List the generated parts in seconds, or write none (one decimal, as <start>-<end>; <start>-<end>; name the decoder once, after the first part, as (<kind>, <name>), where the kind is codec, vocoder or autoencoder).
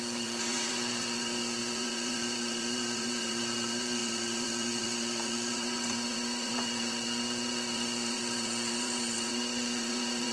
0.0-10.3 (vocoder, Vocos)